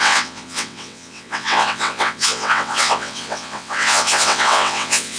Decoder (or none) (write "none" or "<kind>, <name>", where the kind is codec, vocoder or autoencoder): vocoder, WaveNeXt